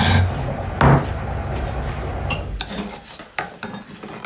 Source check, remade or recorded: recorded